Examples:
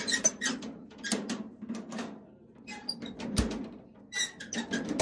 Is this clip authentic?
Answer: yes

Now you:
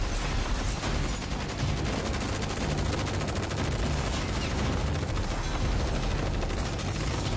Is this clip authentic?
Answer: yes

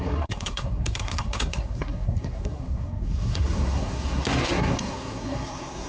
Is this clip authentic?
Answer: no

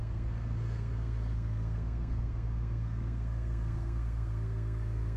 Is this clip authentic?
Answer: no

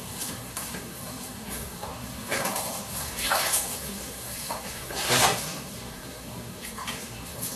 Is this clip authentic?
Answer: no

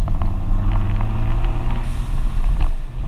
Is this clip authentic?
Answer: yes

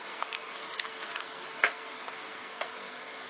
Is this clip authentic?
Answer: no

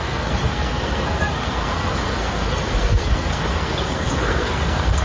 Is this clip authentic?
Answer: no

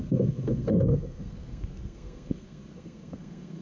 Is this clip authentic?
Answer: no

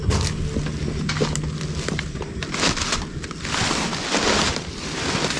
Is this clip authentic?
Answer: yes